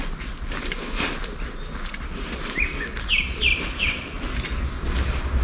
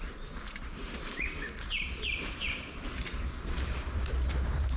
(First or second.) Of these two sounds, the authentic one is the first